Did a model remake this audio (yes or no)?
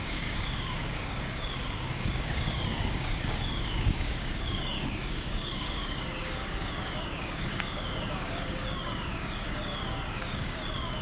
yes